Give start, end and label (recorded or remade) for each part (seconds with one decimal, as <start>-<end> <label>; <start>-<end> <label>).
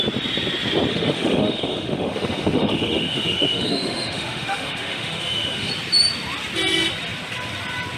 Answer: 0.0-0.9 recorded; 0.9-5.7 remade; 5.7-8.0 recorded